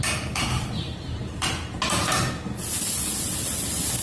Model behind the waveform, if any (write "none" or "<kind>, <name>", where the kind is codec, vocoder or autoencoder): none